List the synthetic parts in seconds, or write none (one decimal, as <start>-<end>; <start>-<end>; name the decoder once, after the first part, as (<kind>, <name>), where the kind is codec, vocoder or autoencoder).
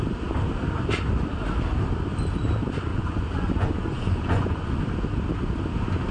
2.9-4.8 (vocoder, Vocos)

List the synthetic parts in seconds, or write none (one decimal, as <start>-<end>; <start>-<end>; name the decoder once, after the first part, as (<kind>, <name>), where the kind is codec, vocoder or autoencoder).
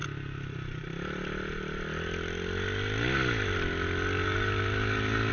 none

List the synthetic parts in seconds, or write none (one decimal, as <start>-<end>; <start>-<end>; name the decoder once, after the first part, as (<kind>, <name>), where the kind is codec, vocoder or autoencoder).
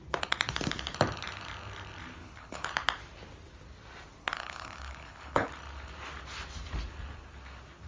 2.2-2.7 (codec, HILCodec); 4.2-5.5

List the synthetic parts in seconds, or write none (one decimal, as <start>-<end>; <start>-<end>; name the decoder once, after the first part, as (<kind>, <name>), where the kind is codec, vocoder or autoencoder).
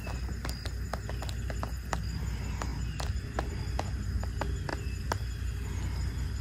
none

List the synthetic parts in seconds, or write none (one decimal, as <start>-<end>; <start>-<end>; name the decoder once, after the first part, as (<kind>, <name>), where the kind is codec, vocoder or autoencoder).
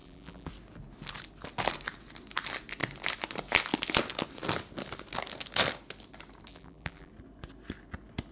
0.0-0.5 (vocoder, BigVGAN v2); 6.5-7.1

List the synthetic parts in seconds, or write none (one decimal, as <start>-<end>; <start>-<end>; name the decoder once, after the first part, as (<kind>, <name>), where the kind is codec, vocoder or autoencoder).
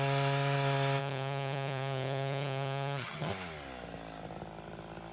1.0-3.3 (vocoder, HiFi-GAN)